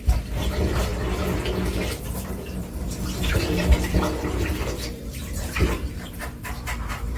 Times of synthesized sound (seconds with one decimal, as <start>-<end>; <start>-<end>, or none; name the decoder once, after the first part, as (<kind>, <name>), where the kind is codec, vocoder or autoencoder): 0.0-0.9 (vocoder, BigVGAN v2); 2.0-7.2